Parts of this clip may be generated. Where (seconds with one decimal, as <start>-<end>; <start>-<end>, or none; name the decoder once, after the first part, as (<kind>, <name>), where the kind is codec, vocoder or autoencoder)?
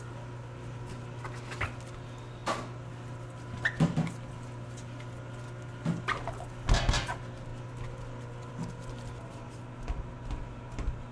none